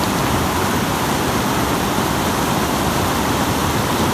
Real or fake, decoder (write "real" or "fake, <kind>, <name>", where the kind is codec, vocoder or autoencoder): real